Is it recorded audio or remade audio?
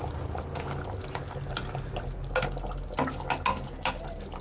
recorded